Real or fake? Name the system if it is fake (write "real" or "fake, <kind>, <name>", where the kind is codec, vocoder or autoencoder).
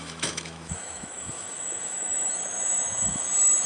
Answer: fake, autoencoder, DAC-VAE